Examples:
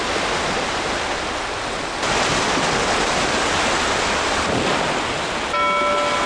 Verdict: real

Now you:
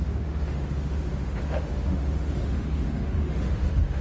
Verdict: fake